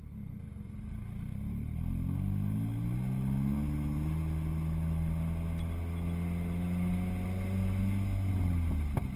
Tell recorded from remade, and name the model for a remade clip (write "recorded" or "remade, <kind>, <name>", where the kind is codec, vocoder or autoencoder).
recorded